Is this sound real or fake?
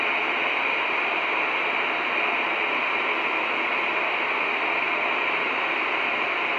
real